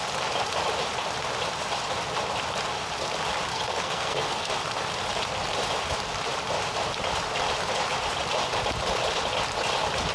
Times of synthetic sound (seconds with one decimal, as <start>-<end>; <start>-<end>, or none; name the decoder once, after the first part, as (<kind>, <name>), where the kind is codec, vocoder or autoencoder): 3.5-4.5 (codec, SNAC)

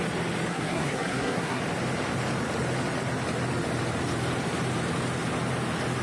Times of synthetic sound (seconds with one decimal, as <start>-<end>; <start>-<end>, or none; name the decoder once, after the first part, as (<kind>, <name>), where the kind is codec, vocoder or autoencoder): 0.5-1.6 (codec, SNAC)

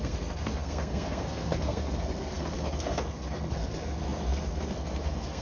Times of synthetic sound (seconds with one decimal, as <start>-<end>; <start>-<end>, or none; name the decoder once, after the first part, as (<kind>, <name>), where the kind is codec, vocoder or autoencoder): 0.0-5.4 (codec, SNAC)

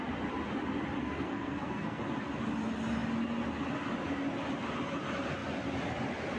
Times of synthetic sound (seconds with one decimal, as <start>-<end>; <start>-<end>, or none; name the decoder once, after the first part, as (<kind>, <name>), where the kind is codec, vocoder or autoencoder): 1.0-2.0 (codec, SNAC)

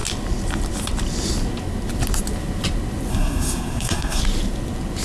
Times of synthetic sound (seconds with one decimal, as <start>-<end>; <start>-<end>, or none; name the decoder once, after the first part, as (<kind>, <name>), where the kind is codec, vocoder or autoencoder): 3.1-4.2 (codec, SNAC)